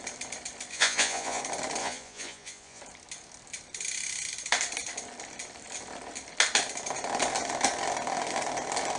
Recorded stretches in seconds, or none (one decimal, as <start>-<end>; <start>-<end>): 0.0-0.7; 1.4-1.8; 2.8-9.0